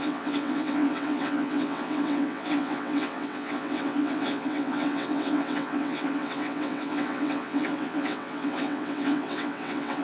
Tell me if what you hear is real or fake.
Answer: fake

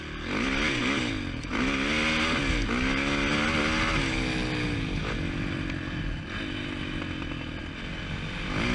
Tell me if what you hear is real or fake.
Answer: real